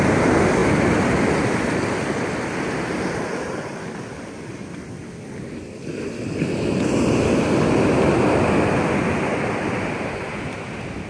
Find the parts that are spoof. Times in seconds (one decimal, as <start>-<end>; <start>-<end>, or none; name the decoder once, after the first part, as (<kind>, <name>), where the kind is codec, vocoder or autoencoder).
none